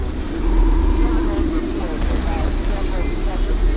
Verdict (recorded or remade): recorded